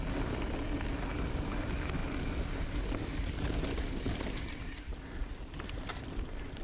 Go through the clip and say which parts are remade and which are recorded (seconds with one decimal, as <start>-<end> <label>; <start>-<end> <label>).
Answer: 0.0-6.6 recorded